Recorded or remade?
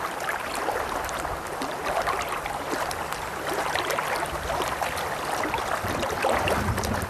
recorded